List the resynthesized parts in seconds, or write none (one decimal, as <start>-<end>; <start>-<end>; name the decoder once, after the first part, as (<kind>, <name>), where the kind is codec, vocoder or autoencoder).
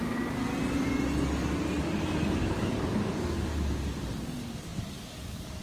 0.0-0.5 (codec, DAC); 1.8-3.5; 4.1-5.6